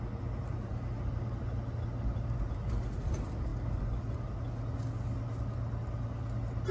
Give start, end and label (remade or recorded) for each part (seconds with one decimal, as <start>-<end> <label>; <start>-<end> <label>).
0.0-6.7 recorded